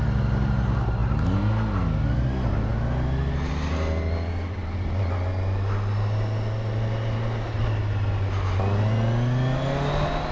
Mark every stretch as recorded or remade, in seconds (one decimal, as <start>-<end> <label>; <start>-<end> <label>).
0.0-10.3 recorded